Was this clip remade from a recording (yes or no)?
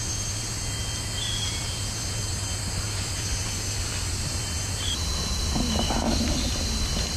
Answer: no